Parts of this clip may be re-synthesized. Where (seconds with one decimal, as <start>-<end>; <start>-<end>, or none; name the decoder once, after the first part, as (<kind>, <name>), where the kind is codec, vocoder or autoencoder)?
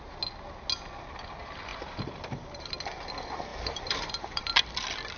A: 1.7-2.7 (vocoder, BigVGAN v2); 3.5-4.4